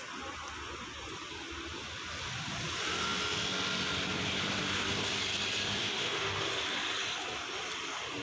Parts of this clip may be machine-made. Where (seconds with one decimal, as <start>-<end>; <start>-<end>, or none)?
5.8-6.5